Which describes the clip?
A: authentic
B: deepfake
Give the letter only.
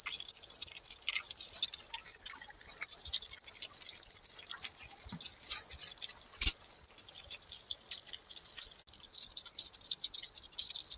A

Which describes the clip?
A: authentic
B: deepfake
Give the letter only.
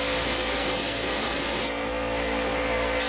B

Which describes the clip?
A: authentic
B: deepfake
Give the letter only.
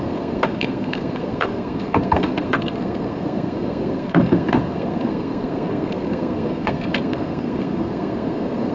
B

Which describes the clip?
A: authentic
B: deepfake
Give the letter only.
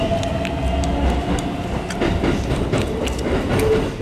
A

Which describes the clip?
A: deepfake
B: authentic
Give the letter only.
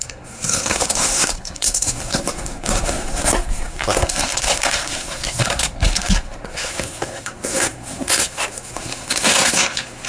A